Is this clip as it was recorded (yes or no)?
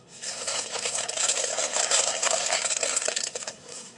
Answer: no